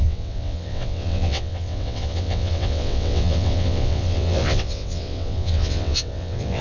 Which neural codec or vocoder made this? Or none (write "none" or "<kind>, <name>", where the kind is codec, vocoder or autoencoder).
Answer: vocoder, WaveNeXt